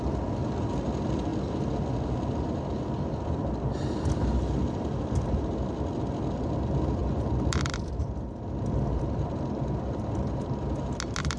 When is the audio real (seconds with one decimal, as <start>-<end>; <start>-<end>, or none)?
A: 0.0-7.0; 10.4-11.4